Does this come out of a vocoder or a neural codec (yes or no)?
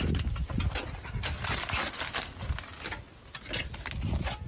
no